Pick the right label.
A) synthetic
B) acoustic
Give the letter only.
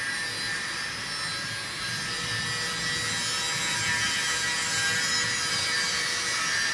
B